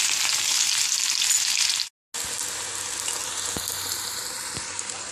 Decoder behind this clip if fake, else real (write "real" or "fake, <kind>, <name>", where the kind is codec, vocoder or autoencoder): real